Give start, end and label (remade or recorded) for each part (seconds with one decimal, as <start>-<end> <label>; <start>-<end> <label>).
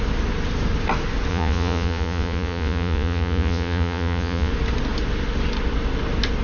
0.0-1.3 recorded; 1.3-4.5 remade; 4.5-6.4 recorded